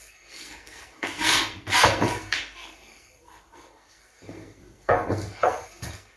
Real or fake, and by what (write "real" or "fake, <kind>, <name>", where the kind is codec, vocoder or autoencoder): fake, codec, SNAC